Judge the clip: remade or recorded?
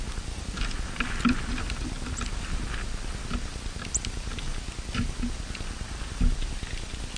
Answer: recorded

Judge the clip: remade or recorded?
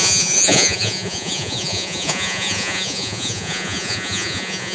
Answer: remade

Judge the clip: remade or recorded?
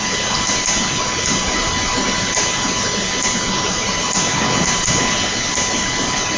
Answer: recorded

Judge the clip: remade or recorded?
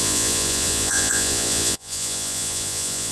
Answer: remade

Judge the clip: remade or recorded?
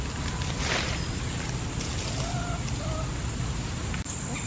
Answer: recorded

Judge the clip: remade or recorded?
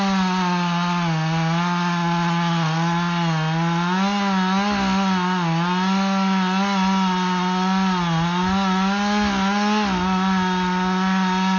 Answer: recorded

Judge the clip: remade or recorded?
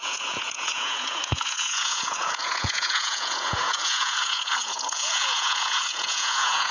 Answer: remade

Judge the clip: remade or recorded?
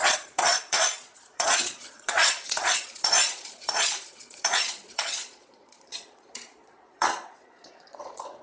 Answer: remade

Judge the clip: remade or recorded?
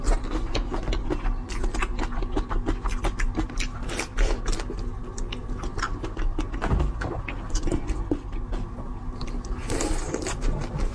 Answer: recorded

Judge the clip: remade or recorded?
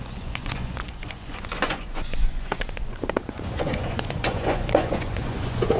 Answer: remade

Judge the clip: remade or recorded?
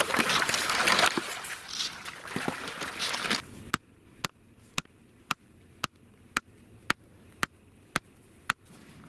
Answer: recorded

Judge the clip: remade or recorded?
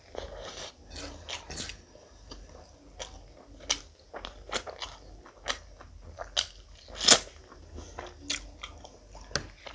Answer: recorded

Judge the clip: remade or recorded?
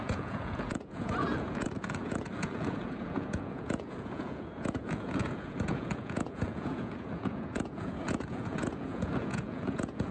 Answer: remade